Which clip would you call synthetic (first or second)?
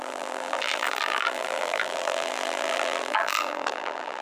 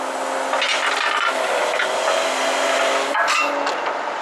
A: first